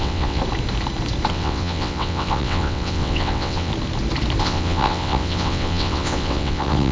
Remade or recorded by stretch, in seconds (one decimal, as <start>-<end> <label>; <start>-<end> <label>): 0.0-0.4 remade; 0.4-1.3 recorded; 1.3-3.7 remade; 3.7-4.4 recorded; 4.4-6.9 remade